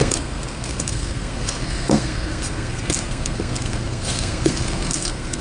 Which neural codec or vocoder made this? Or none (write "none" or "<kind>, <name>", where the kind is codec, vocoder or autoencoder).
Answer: codec, SNAC